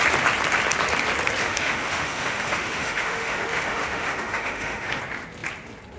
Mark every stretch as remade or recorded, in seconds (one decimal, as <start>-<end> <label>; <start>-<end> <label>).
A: 0.0-1.4 recorded; 1.4-5.0 remade; 5.0-6.0 recorded